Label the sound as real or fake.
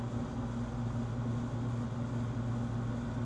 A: real